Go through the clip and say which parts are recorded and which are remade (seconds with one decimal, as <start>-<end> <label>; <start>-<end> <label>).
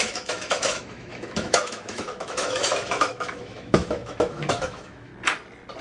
0.0-5.1 remade; 5.1-5.8 recorded